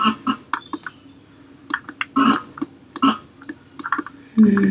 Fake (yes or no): no